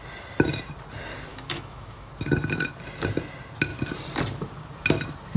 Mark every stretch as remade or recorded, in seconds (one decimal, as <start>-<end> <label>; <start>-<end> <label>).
0.0-1.3 recorded; 1.3-2.1 remade; 2.1-5.4 recorded